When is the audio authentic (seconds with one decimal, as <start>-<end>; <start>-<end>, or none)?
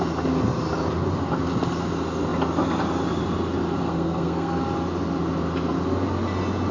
0.0-3.8; 4.6-6.7